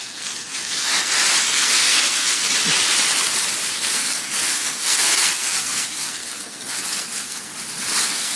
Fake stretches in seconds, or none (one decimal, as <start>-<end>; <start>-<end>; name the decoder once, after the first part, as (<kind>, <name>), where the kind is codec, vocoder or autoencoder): 0.0-2.5 (codec, SNAC); 3.7-7.5; 8.0-8.4